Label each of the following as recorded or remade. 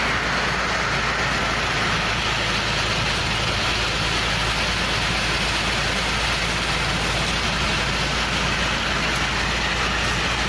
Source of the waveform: recorded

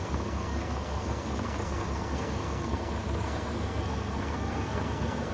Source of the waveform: remade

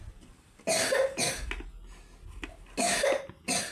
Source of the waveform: recorded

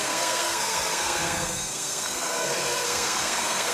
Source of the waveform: remade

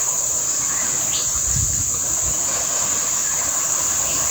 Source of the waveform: recorded